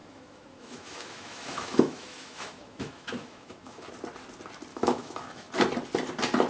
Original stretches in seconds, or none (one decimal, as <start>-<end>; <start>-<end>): 3.9-4.7; 5.5-6.5